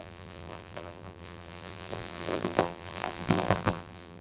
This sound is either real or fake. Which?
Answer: fake